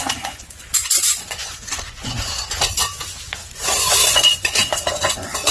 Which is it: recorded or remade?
remade